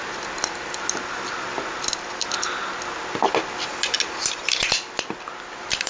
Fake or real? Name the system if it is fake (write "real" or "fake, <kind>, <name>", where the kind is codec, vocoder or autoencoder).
real